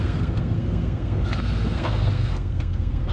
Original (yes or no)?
no